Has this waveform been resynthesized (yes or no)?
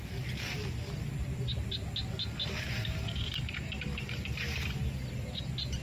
no